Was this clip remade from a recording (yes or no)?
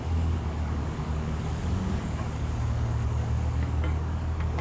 yes